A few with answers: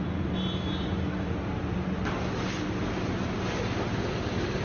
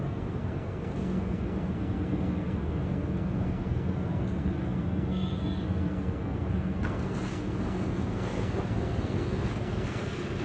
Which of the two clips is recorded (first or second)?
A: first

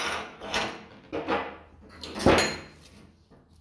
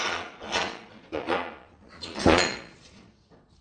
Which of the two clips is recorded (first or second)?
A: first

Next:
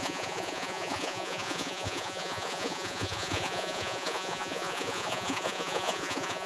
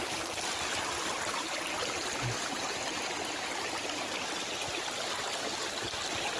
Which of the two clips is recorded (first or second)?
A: second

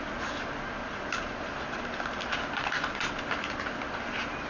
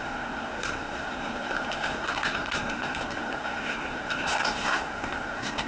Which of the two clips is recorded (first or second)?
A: first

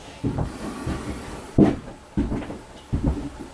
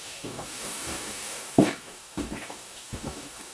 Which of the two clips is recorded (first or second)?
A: first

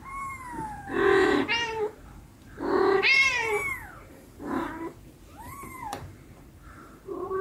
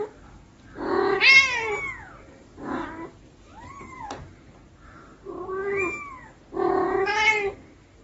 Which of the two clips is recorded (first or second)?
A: second